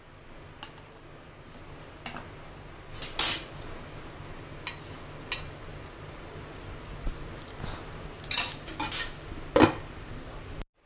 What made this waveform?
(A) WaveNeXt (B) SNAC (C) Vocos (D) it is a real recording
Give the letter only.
D